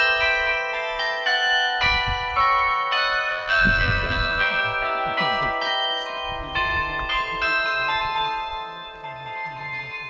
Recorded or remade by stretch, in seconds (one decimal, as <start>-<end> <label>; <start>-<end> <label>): 0.0-3.3 recorded; 3.3-4.6 remade; 4.6-10.1 recorded